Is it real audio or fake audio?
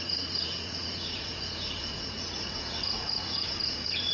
fake